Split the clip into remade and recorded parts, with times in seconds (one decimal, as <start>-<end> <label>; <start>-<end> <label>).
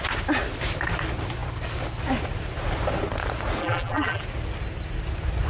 0.0-3.6 recorded; 3.6-4.2 remade; 4.2-5.5 recorded